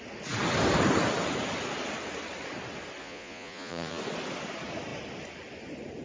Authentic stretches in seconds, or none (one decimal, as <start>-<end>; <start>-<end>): 0.0-3.0; 4.0-6.0